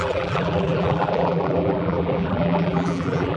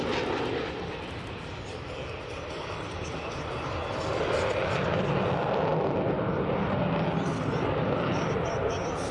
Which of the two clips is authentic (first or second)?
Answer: second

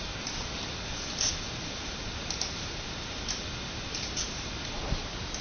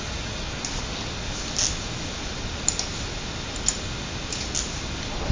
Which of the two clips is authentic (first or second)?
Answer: second